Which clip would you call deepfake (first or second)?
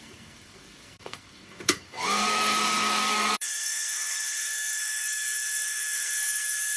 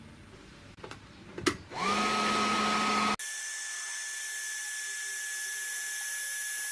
first